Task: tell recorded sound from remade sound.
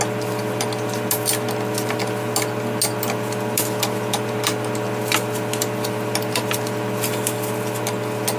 recorded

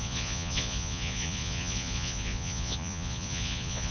remade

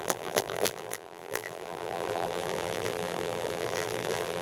remade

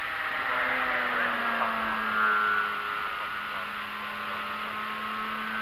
recorded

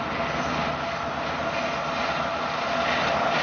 recorded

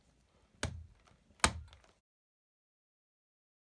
recorded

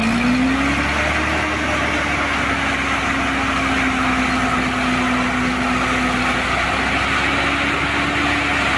recorded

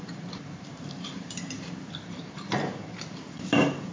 remade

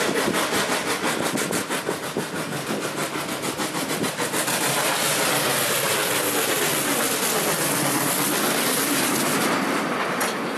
recorded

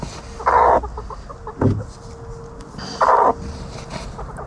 recorded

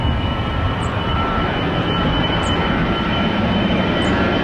remade